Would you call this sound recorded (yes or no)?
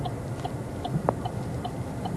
yes